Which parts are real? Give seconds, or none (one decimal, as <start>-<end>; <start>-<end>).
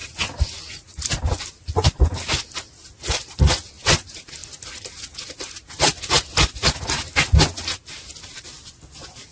0.0-9.3